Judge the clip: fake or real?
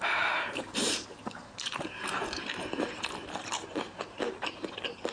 fake